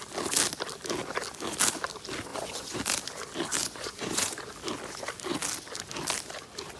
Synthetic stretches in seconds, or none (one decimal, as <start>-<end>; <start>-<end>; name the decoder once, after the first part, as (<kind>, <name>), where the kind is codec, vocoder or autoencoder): 2.3-2.8 (vocoder, Vocos); 3.6-4.4